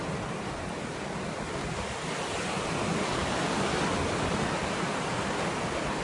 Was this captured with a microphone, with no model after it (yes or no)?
yes